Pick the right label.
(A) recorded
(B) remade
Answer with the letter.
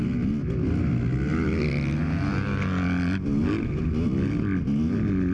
A